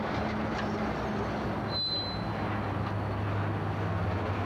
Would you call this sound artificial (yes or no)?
no